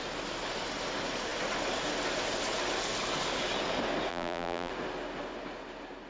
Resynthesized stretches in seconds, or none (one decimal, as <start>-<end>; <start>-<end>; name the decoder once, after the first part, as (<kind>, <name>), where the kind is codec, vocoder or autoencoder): 4.1-4.7 (vocoder, BigVGAN v2)